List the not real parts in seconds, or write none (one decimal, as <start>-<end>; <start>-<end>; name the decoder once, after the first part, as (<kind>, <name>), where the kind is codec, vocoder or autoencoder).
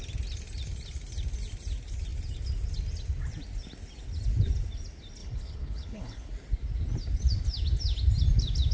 5.2-6.3 (codec, HILCodec)